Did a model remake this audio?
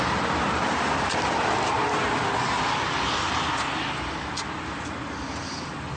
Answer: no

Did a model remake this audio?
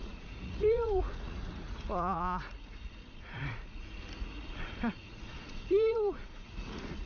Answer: yes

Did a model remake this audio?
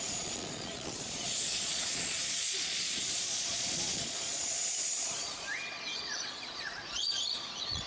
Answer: yes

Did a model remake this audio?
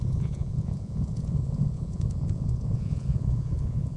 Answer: yes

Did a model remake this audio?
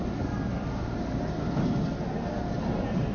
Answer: no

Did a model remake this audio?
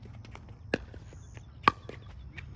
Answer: no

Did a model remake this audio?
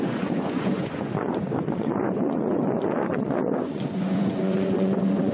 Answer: yes